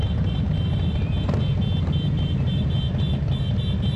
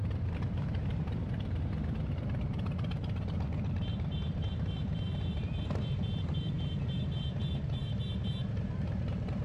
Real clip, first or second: first